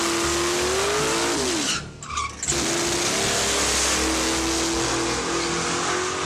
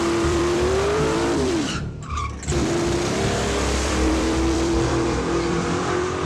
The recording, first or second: first